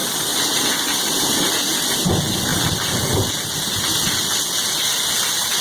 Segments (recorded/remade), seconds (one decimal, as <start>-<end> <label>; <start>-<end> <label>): 0.0-5.6 recorded